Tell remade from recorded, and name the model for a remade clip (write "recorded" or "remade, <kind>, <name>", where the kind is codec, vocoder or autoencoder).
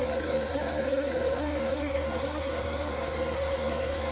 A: remade, codec, SNAC